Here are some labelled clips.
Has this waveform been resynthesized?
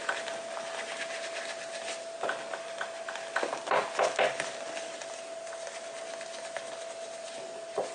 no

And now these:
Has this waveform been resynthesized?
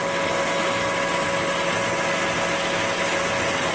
no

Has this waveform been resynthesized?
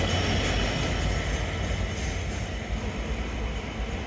no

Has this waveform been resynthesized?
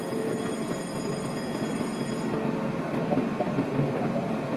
no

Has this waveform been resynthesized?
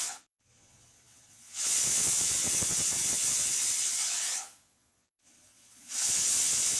yes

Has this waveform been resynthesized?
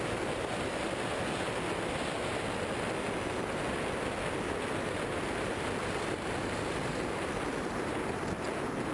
no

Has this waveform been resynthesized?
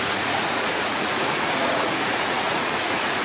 yes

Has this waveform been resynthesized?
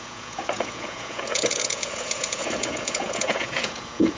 yes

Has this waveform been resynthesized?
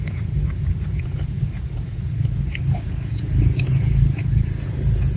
yes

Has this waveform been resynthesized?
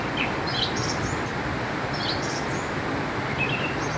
no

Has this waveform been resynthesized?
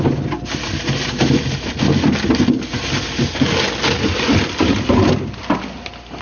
no